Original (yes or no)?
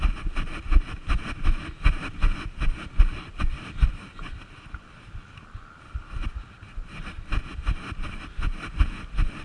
yes